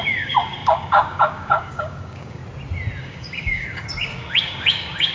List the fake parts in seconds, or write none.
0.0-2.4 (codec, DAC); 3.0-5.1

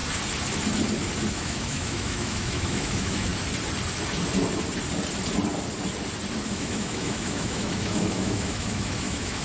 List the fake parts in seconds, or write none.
1.3-3.3 (autoencoder, DAC-VAE); 6.5-9.4

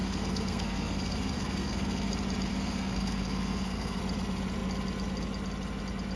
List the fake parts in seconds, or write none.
0.0-2.1 (codec, SNAC); 2.5-4.0

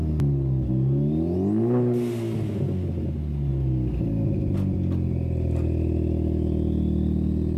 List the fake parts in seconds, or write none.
none

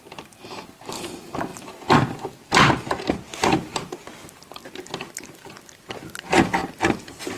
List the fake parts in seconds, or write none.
none

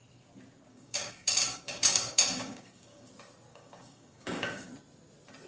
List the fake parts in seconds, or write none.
0.7-3.1 (codec, DAC); 3.5-4.7

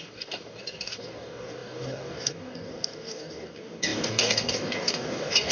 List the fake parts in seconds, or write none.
0.0-5.5 (codec, DAC)